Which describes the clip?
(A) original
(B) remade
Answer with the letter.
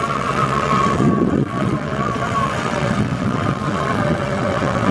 B